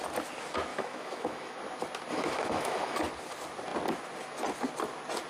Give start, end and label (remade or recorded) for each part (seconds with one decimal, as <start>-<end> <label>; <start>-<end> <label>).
0.0-0.7 recorded; 0.7-1.6 remade; 1.6-2.1 recorded; 2.1-3.0 remade; 3.0-5.3 recorded